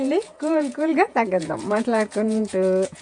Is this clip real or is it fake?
fake